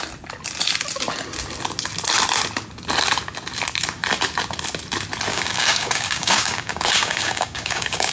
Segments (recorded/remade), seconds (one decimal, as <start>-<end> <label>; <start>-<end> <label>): 0.0-5.3 recorded; 5.3-8.1 remade